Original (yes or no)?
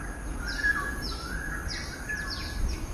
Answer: yes